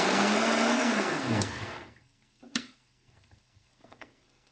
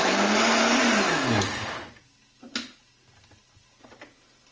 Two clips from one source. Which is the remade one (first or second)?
first